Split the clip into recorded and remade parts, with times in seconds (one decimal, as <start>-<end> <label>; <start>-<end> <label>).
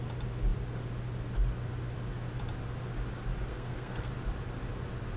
0.0-3.5 recorded; 3.5-4.1 remade; 4.1-5.2 recorded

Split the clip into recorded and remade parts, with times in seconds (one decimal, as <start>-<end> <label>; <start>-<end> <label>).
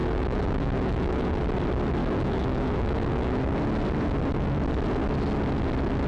0.0-1.4 remade; 1.4-2.0 recorded; 2.0-3.4 remade; 3.4-6.1 recorded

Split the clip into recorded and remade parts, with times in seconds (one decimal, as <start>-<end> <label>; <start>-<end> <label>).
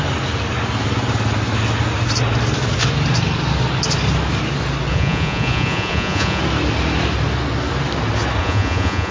0.0-4.9 recorded; 4.9-6.4 remade; 6.4-8.4 recorded; 8.4-9.1 remade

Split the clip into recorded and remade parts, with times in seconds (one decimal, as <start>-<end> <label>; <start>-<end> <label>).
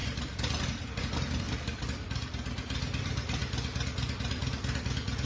0.0-3.4 remade; 3.4-5.3 recorded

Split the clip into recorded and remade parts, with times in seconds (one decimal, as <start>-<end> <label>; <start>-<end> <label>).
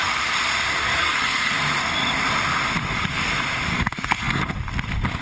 0.0-1.0 recorded; 1.0-1.5 remade; 1.5-3.7 recorded; 3.7-4.4 remade; 4.4-5.2 recorded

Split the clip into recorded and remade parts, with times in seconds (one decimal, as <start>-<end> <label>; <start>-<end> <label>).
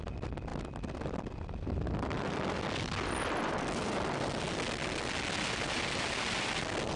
0.0-7.0 recorded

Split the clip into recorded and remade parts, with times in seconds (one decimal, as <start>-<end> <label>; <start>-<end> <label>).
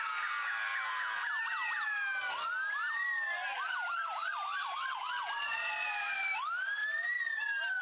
0.0-3.5 recorded; 3.5-5.0 remade; 5.0-7.8 recorded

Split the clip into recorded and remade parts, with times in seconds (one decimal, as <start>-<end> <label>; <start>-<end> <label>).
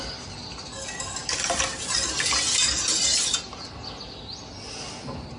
0.0-5.4 recorded